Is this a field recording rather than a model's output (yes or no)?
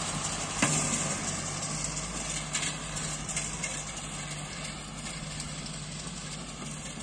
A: yes